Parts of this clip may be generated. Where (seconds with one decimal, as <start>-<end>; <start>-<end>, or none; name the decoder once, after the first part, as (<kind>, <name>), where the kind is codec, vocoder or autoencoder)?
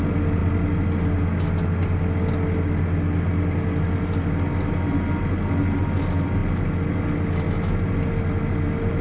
none